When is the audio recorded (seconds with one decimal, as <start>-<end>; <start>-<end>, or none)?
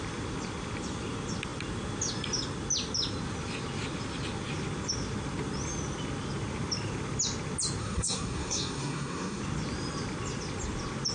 0.0-7.8; 9.4-11.1